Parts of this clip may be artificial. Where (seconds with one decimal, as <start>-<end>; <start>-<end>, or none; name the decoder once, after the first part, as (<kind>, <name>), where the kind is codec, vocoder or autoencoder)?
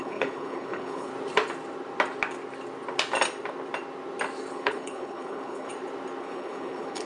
0.0-1.1 (codec, HILCodec); 4.5-5.7; 6.2-7.1